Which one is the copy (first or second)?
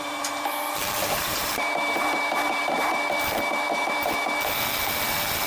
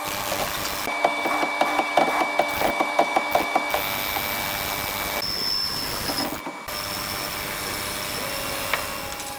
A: first